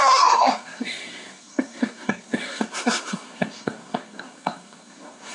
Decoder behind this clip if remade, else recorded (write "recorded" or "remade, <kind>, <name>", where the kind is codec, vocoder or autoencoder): remade, codec, SNAC